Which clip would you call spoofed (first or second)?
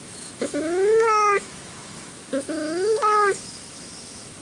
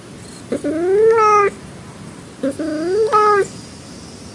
first